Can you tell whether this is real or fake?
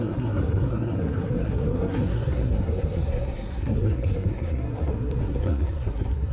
fake